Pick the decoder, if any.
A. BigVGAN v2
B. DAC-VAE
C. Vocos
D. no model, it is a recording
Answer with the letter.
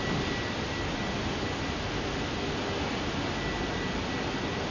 D